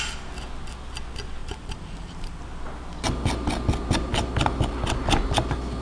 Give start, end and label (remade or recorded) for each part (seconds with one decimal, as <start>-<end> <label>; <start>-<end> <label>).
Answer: 0.0-1.4 recorded; 1.4-2.4 remade; 2.4-5.8 recorded